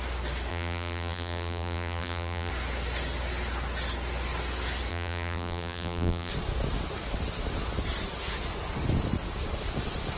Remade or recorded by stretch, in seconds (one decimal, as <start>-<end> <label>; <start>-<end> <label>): 0.0-0.5 recorded; 0.5-2.5 remade; 2.5-4.9 recorded; 4.9-6.3 remade; 6.3-10.2 recorded